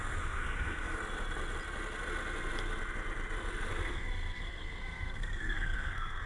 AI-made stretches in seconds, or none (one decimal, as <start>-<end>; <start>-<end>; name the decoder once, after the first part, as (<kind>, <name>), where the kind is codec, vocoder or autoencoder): 0.0-1.0 (codec, SNAC); 3.9-6.3